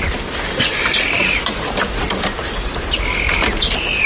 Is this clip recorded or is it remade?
recorded